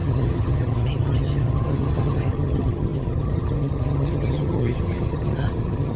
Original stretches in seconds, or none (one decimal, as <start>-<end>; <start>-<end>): none